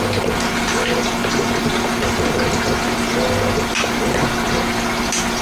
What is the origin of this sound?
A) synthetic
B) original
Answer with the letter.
B